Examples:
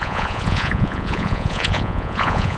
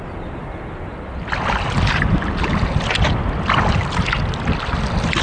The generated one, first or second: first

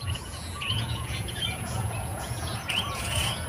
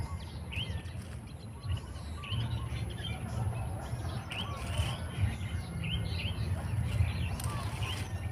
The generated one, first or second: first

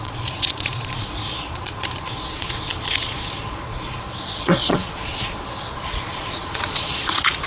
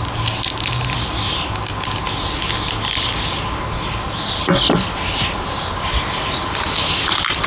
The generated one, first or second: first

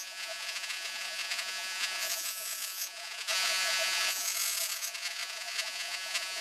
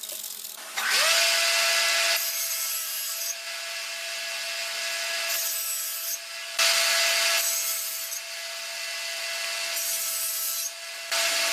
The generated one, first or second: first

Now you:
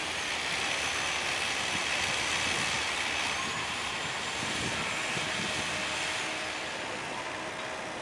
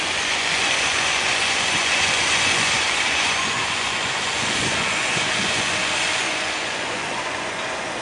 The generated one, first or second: second